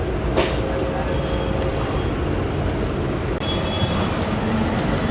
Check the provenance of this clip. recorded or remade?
recorded